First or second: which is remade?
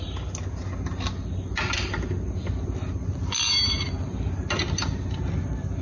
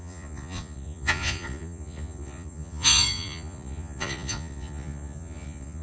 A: second